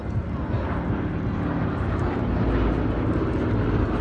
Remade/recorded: recorded